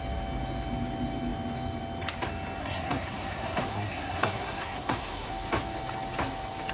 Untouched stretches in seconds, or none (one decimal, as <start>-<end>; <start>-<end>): 0.0-2.6; 5.3-6.7